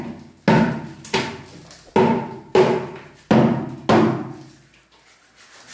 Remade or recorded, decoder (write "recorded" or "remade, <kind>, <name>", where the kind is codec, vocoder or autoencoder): recorded